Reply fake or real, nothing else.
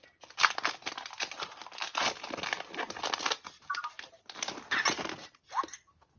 real